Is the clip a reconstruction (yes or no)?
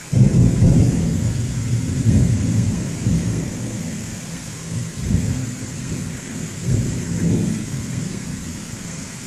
yes